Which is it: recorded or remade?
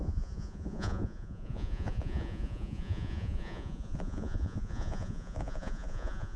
remade